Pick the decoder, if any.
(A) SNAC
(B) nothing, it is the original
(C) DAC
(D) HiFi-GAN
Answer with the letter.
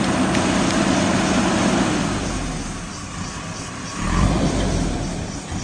B